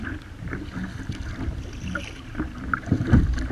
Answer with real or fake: real